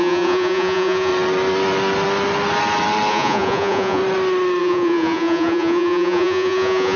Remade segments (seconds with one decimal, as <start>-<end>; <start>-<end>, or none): 0.0-1.1; 3.1-4.0; 4.6-7.0